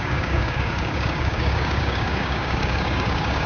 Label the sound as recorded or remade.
remade